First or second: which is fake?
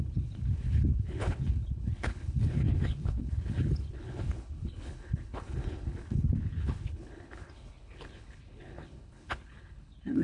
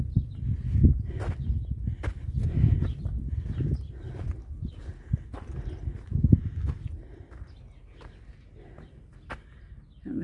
first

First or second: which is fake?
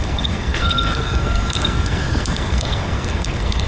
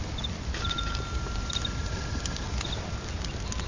first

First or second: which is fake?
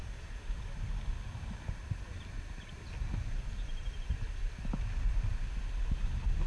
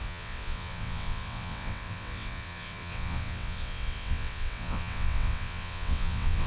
second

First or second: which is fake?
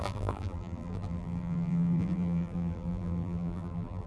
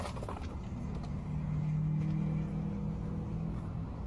first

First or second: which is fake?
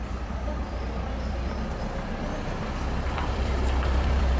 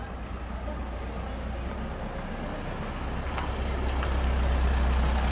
first